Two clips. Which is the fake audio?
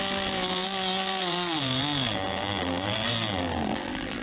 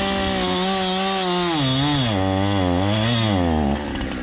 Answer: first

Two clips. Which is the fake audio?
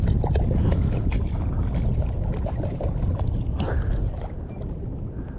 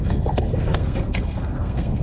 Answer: second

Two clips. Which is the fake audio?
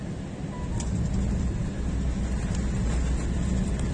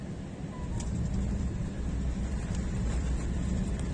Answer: second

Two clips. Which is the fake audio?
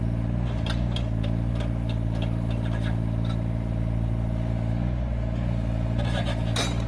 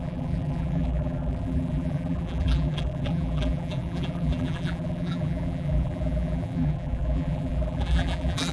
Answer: second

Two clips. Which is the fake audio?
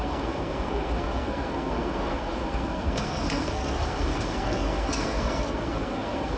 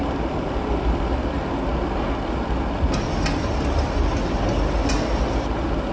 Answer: first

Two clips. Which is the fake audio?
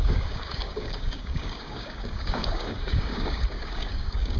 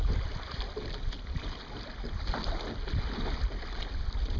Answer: first